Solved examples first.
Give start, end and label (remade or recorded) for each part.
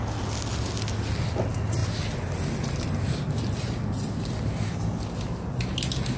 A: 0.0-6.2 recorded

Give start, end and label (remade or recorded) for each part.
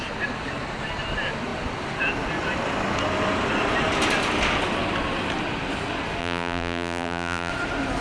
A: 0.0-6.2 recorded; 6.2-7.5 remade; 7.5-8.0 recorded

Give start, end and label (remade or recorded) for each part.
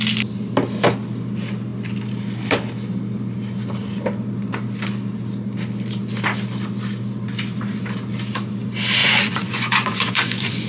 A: 0.0-9.0 recorded; 9.0-10.7 remade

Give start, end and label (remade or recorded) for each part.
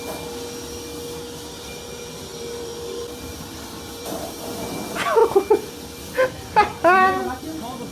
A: 0.0-2.3 recorded; 2.3-4.4 remade; 4.4-7.9 recorded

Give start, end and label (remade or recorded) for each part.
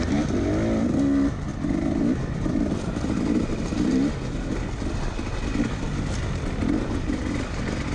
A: 0.0-7.9 recorded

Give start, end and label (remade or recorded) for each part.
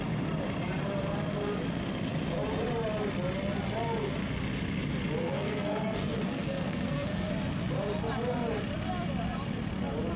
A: 0.0-5.2 recorded; 5.2-7.3 remade; 7.3-10.2 recorded